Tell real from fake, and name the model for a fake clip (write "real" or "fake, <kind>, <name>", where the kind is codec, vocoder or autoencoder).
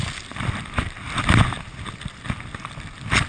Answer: real